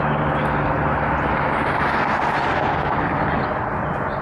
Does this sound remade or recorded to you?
recorded